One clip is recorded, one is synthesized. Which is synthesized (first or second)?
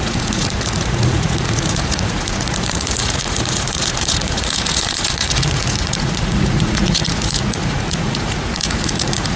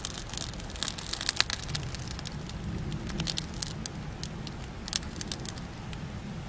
first